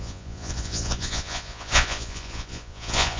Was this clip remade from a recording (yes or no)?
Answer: yes